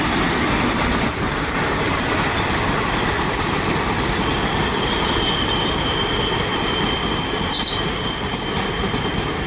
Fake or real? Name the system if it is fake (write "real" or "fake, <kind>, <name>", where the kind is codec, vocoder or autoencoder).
real